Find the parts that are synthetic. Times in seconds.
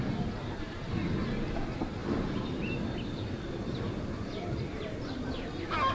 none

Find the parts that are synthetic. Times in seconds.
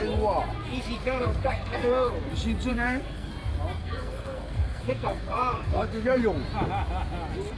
1.0-2.1 (codec, SNAC); 2.7-3.3; 3.8-6.2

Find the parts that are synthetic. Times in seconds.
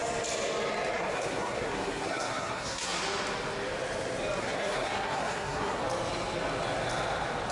0.9-3.0 (codec, SNAC); 4.4-5.8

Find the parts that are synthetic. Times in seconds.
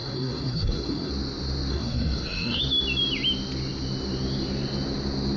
0.0-1.1 (codec, SNAC); 1.7-2.6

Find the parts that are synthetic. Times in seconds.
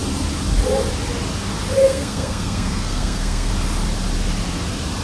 1.8-3.5 (codec, SNAC)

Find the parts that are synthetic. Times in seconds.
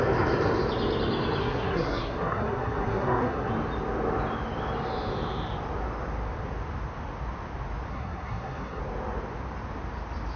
1.4-3.5 (codec, SNAC); 7.9-8.8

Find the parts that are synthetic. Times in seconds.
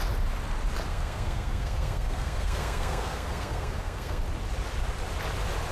0.9-4.2 (codec, SNAC)